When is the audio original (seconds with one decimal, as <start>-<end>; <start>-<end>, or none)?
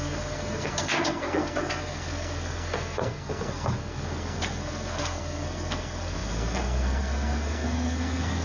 none